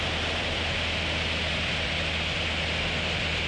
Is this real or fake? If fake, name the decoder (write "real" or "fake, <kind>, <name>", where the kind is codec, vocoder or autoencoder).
real